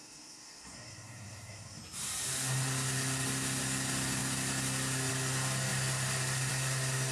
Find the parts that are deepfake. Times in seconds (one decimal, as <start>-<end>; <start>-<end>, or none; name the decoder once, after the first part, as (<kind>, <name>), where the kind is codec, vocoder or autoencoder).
0.0-1.8 (codec, SNAC)